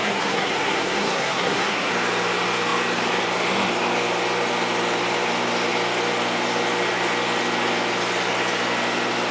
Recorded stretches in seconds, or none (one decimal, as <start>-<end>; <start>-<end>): 1.9-9.3